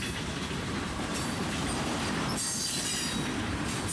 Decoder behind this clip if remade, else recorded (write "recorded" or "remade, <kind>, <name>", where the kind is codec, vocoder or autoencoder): recorded